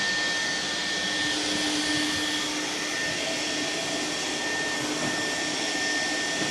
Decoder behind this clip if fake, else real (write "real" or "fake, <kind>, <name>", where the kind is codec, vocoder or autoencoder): real